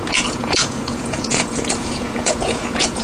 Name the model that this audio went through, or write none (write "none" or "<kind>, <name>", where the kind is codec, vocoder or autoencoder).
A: vocoder, Vocos